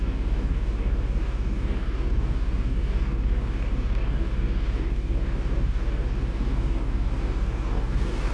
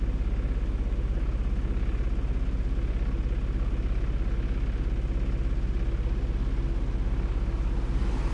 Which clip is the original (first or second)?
second